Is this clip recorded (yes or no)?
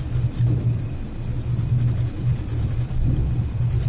yes